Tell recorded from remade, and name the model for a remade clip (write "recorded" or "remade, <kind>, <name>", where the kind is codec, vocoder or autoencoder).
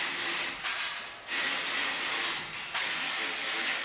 recorded